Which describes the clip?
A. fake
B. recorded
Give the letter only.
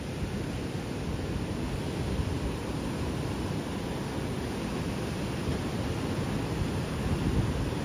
B